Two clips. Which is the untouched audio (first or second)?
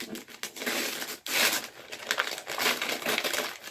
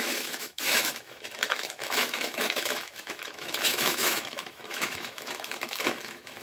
first